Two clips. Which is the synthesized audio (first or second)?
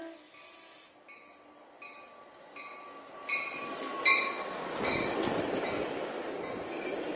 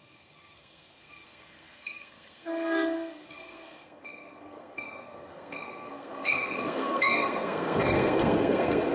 second